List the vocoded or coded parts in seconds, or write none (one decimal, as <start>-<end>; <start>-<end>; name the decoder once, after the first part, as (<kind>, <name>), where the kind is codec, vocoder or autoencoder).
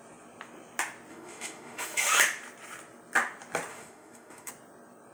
1.1-2.2 (autoencoder, DAC-VAE); 3.7-4.5